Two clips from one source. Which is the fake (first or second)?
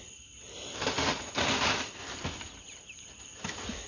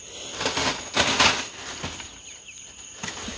first